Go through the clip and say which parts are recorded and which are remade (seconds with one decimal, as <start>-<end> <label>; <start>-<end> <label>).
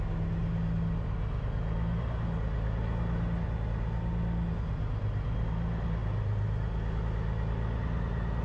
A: 0.0-8.4 recorded